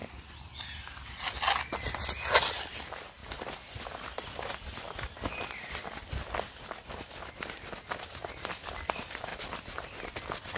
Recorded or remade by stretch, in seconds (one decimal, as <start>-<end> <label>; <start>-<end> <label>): 0.0-10.6 recorded